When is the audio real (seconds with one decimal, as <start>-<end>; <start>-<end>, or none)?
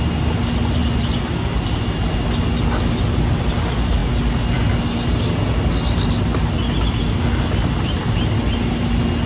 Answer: 0.0-9.3